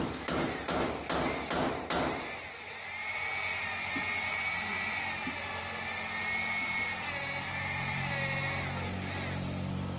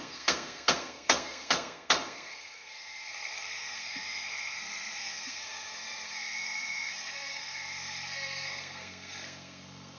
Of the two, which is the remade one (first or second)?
second